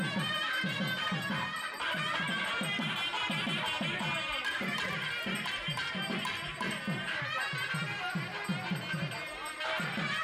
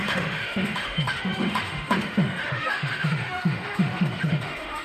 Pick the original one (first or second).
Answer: first